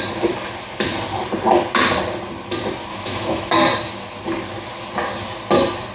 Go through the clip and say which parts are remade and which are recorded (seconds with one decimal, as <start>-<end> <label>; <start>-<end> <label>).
0.0-2.9 recorded; 2.9-3.5 remade; 3.5-5.9 recorded